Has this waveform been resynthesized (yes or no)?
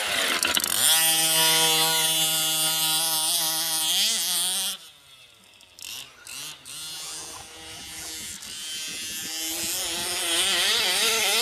no